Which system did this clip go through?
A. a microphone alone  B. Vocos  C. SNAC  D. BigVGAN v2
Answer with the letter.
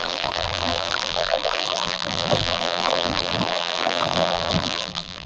D